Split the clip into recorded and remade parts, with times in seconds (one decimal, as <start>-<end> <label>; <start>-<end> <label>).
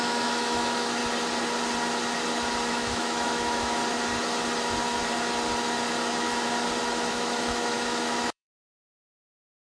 0.0-1.0 remade; 1.0-2.7 recorded; 2.7-3.8 remade; 3.8-7.1 recorded; 7.1-9.7 remade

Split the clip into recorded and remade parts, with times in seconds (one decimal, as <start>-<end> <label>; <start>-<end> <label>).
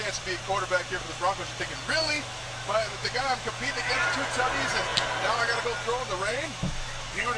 0.0-2.0 recorded; 2.0-3.9 remade; 3.9-6.3 recorded; 6.3-7.4 remade